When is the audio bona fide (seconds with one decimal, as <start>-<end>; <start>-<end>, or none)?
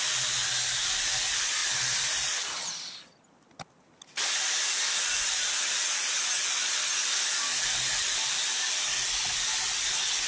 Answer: 0.0-10.3